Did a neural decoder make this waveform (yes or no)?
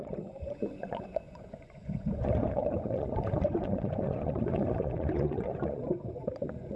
yes